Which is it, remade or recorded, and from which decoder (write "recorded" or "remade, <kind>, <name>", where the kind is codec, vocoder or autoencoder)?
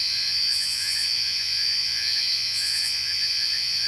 remade, vocoder, Vocos